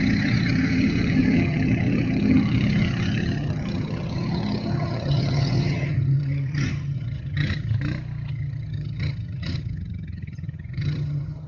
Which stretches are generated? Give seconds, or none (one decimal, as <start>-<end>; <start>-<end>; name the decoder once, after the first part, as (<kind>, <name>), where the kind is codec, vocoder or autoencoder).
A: 0.0-7.7 (vocoder, HiFi-GAN); 8.3-11.5